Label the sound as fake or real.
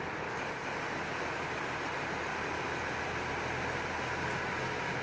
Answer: real